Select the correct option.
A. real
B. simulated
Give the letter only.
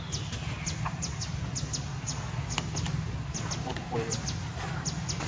A